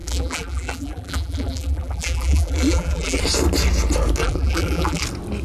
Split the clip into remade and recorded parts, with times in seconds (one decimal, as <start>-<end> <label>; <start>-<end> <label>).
0.0-3.2 remade; 3.2-4.2 recorded; 4.2-5.0 remade; 5.0-5.4 recorded